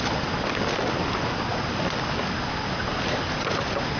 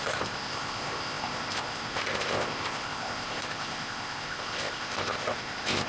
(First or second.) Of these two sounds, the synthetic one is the second